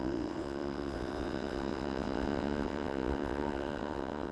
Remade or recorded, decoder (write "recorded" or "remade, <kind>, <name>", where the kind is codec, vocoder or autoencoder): remade, vocoder, WaveNeXt